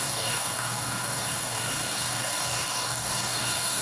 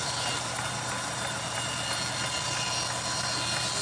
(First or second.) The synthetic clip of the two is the first